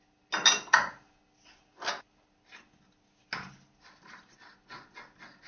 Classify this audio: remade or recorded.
recorded